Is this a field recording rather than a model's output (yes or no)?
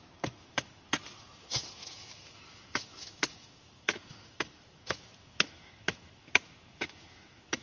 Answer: no